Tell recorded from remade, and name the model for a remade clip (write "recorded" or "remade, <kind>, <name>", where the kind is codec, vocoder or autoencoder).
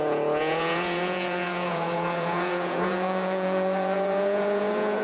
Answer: remade, vocoder, Vocos